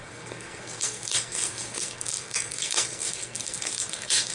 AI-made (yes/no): yes